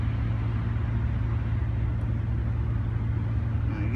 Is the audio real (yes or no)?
yes